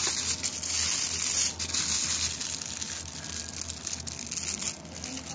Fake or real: real